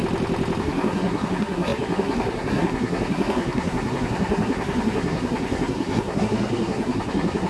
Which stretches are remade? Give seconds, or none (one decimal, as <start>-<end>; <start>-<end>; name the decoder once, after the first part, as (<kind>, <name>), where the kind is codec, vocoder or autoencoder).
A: 0.6-7.5 (codec, SNAC)